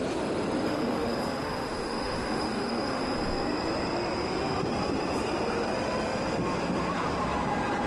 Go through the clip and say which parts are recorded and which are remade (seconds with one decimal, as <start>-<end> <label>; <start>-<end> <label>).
0.0-0.7 recorded; 0.7-3.0 remade; 3.0-7.9 recorded